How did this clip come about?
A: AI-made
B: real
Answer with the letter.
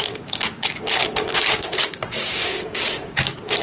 A